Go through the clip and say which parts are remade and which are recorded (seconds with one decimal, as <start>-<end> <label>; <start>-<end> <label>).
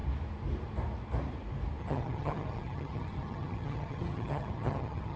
0.0-1.8 recorded; 1.8-5.2 remade